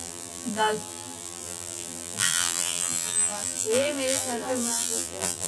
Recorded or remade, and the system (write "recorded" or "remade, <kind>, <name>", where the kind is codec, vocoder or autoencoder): remade, vocoder, BigVGAN v2